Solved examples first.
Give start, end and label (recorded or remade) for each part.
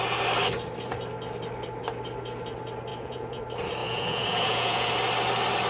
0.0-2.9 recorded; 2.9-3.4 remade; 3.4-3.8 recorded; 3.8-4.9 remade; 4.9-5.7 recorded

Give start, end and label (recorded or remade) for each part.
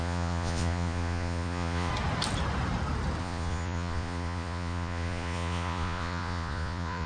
0.0-1.9 remade; 1.9-3.2 recorded; 3.2-7.1 remade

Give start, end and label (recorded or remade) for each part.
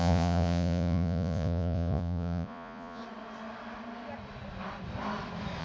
0.0-3.0 remade; 3.0-5.6 recorded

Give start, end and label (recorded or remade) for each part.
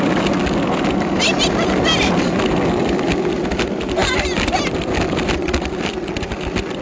0.0-6.8 recorded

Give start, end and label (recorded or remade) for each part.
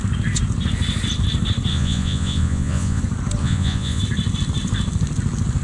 0.0-1.7 recorded; 1.7-3.0 remade; 3.0-3.4 recorded; 3.4-4.0 remade; 4.0-5.6 recorded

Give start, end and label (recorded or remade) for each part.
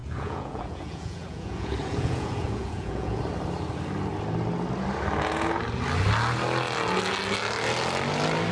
0.0-3.2 remade; 3.2-8.5 recorded